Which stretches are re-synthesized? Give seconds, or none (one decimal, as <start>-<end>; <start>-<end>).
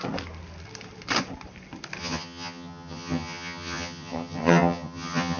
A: 2.0-5.4